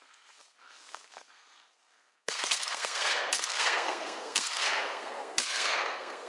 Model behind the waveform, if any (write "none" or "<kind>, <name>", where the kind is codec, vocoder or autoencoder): codec, SNAC